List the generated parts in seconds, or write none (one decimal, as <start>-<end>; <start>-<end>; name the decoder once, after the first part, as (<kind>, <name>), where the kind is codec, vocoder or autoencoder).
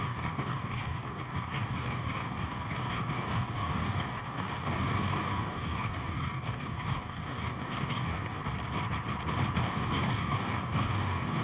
0.0-8.4 (codec, DAC); 9.6-11.4